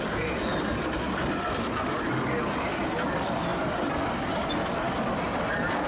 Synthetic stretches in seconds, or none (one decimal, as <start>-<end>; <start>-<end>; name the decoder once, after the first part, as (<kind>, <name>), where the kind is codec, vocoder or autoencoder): none